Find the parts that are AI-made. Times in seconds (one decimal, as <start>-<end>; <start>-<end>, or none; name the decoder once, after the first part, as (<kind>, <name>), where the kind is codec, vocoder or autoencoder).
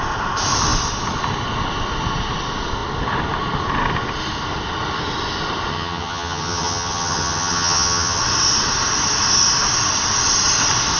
5.7-8.2 (vocoder, HiFi-GAN)